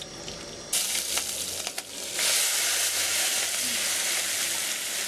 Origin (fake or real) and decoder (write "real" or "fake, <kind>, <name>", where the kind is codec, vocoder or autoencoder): real